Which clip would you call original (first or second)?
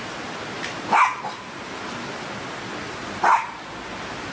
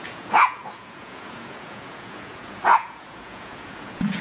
first